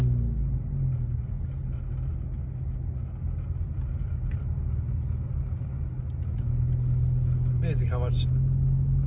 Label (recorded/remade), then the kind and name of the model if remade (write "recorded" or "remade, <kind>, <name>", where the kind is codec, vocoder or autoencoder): recorded